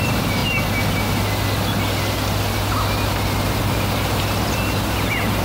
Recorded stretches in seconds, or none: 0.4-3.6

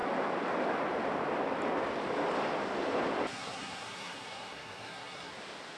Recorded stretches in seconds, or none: 0.0-3.3; 5.3-5.8

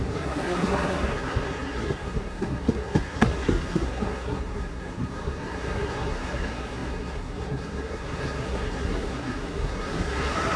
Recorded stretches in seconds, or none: none

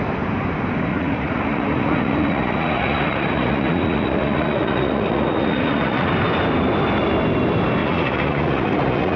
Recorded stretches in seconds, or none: 0.0-0.9; 6.1-7.8

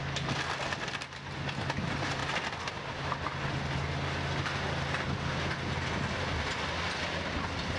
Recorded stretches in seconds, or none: 0.0-7.8

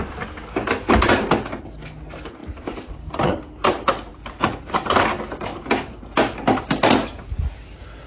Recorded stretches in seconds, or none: 0.0-2.4; 3.3-4.1; 5.0-5.5; 6.0-8.1

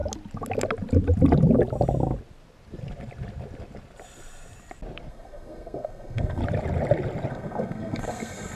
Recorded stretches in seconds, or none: 0.0-5.1; 6.4-7.3

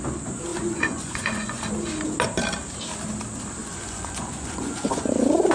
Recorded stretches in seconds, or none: 0.0-0.5; 1.6-3.6; 5.1-5.5